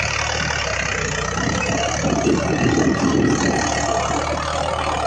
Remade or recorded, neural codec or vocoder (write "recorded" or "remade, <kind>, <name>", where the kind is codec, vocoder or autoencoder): recorded